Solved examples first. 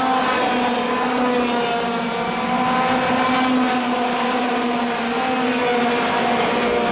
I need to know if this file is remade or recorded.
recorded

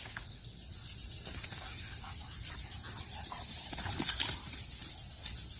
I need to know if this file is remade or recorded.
remade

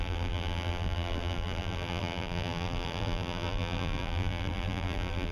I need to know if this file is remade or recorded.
remade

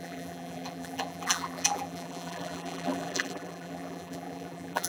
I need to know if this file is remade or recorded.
remade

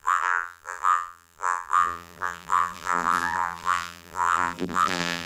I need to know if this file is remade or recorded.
remade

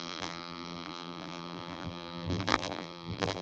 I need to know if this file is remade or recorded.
remade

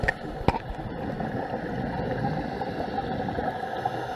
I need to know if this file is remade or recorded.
recorded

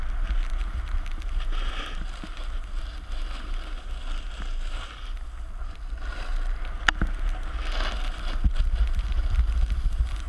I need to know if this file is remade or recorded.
recorded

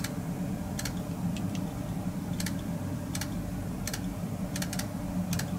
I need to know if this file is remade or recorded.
remade